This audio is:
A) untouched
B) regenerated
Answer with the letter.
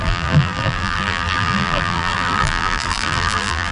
B